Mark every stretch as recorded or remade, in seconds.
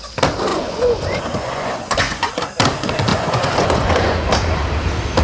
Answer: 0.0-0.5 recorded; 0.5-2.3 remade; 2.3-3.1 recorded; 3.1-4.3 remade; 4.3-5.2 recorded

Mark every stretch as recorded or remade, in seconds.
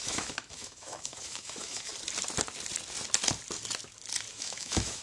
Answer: 0.0-1.9 remade; 1.9-4.3 recorded; 4.3-5.0 remade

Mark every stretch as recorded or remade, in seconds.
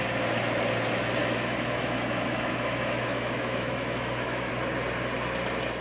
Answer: 0.0-1.2 recorded; 1.2-4.5 remade; 4.5-5.8 recorded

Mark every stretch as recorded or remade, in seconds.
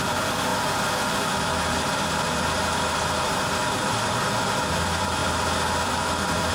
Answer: 0.0-6.5 remade